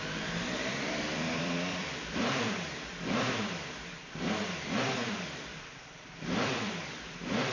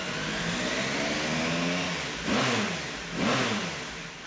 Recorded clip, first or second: second